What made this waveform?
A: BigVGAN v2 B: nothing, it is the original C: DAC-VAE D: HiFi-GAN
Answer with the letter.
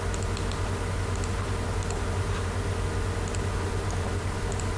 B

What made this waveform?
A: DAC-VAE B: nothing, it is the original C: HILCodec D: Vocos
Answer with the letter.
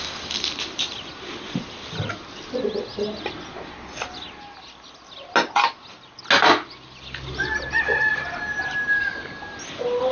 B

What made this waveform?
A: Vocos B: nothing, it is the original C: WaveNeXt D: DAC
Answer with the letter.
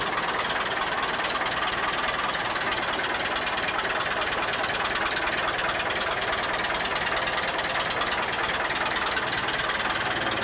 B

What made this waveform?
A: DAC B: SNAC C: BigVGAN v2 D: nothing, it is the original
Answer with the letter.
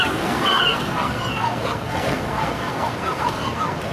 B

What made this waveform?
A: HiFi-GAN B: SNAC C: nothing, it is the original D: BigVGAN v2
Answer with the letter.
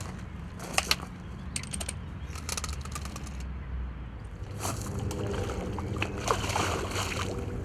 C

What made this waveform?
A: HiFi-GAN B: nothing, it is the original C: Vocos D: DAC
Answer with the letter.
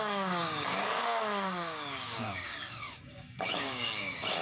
D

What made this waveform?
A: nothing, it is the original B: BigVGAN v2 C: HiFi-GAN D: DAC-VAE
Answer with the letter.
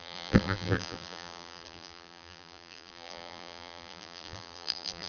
B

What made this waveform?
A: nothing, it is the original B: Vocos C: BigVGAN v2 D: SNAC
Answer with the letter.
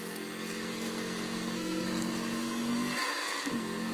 D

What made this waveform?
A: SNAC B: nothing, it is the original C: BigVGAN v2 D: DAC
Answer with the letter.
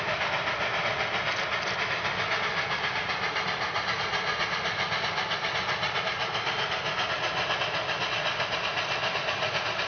B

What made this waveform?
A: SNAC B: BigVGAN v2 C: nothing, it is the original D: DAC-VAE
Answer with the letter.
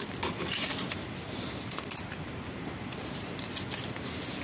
C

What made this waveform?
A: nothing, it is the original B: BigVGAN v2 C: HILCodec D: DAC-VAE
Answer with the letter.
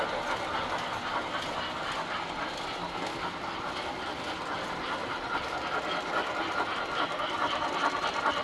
A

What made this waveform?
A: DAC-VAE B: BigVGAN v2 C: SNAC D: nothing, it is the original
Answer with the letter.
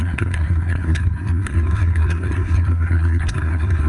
C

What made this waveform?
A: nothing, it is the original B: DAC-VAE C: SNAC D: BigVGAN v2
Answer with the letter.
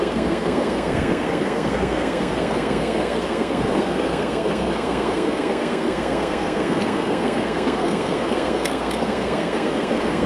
C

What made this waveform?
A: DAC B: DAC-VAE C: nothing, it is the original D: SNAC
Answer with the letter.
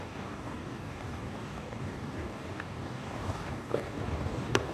A